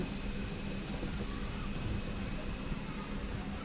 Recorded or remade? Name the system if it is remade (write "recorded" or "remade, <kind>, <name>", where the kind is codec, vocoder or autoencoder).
recorded